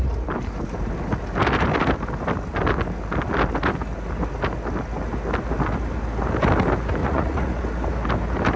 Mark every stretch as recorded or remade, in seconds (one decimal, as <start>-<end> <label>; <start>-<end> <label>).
0.0-7.0 recorded; 7.0-7.6 remade; 7.6-8.6 recorded